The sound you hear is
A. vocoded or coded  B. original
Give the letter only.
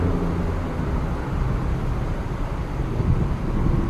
B